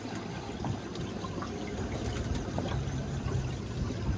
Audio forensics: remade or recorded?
recorded